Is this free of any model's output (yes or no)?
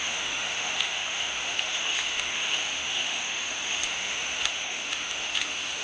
no